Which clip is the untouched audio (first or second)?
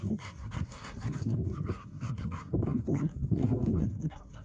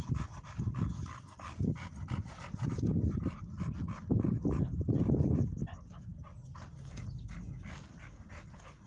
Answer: second